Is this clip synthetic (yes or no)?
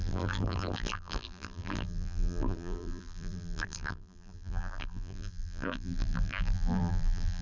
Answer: yes